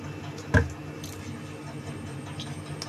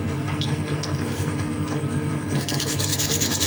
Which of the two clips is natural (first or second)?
first